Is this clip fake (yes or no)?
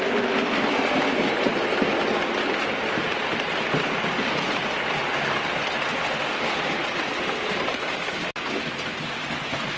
no